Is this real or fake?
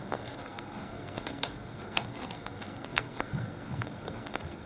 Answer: fake